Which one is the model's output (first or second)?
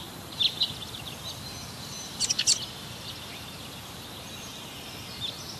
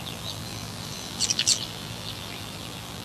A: second